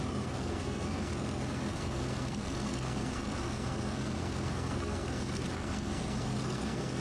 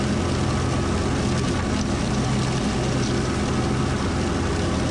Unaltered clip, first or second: second